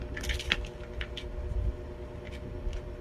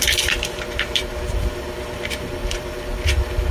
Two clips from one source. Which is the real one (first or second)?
first